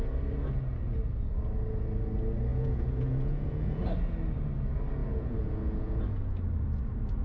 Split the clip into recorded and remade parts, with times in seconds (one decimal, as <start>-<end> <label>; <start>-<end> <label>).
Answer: 0.0-2.5 recorded; 2.5-3.8 remade; 3.8-5.0 recorded; 5.0-6.0 remade; 6.0-7.2 recorded

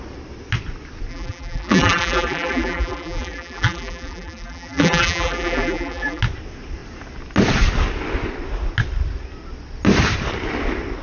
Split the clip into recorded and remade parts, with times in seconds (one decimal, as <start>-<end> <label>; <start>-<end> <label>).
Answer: 0.0-1.1 recorded; 1.1-6.2 remade; 6.2-11.0 recorded